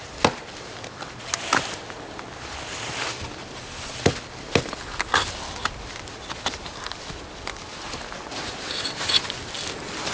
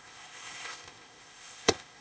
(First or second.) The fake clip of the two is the second